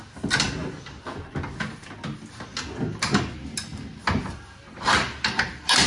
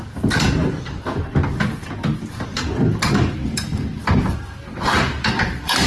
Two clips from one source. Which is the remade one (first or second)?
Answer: second